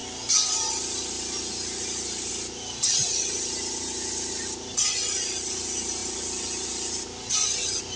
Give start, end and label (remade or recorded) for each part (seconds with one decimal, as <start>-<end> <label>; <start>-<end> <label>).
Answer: 0.0-8.0 recorded